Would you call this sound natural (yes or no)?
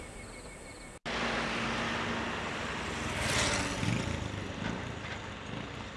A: yes